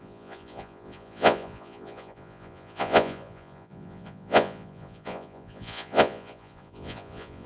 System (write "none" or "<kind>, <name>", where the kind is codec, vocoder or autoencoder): vocoder, Vocos